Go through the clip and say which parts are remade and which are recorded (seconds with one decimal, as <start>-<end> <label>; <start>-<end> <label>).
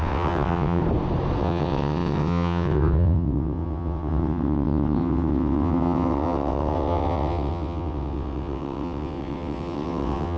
0.0-0.8 remade; 0.8-1.4 recorded; 1.4-10.4 remade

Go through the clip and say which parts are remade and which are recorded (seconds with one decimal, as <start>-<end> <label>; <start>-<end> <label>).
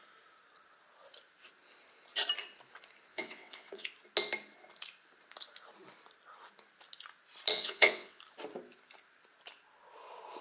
0.0-3.1 recorded; 3.1-3.9 remade; 3.9-7.5 recorded; 7.5-8.2 remade; 8.2-10.4 recorded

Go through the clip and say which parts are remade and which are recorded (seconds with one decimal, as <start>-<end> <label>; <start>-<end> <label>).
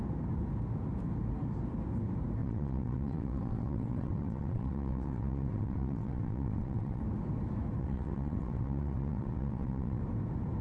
0.0-2.4 recorded; 2.4-7.0 remade; 7.0-7.8 recorded; 7.8-10.0 remade; 10.0-10.6 recorded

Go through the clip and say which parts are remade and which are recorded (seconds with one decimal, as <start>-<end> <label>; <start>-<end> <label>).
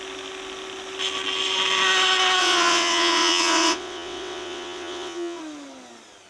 0.0-2.4 recorded; 2.4-5.4 remade; 5.4-6.3 recorded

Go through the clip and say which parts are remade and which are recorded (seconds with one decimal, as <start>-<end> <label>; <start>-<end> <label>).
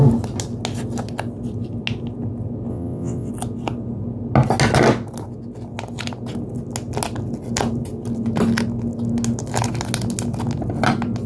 0.0-2.7 recorded; 2.7-3.3 remade; 3.3-11.3 recorded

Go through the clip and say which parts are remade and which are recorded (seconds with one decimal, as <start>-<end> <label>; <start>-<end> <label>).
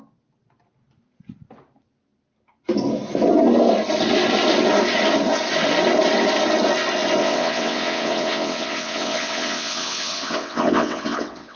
0.0-7.2 recorded; 7.2-11.6 remade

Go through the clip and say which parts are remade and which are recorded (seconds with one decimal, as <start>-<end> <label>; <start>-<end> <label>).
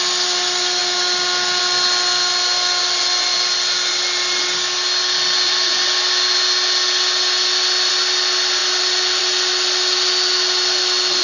0.0-11.2 recorded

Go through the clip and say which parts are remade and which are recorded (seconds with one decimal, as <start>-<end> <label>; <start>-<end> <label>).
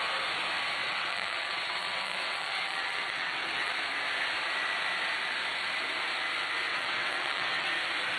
0.0-0.8 recorded; 0.8-3.7 remade; 3.7-6.7 recorded; 6.7-7.7 remade; 7.7-8.2 recorded